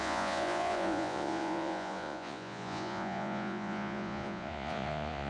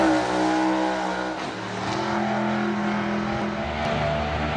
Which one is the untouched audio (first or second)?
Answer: second